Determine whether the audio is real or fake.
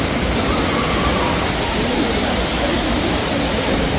real